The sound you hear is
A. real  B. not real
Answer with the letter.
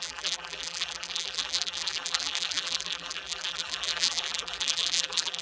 B